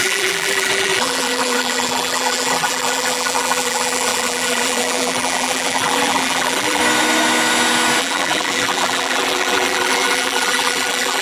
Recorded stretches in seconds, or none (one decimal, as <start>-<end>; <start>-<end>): 6.8-8.0